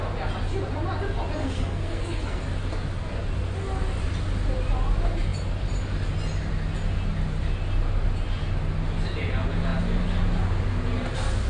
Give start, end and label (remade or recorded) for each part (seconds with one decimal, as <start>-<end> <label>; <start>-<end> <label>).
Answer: 0.0-1.4 recorded; 1.4-2.4 remade; 2.4-11.5 recorded